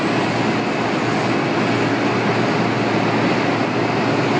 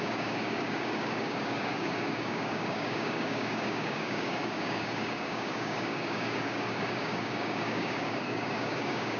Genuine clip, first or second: first